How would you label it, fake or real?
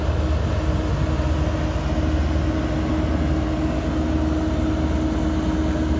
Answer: real